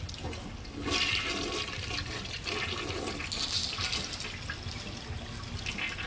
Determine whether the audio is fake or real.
real